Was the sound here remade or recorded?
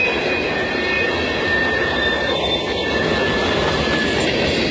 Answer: recorded